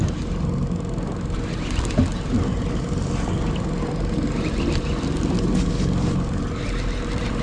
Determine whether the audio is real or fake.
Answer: real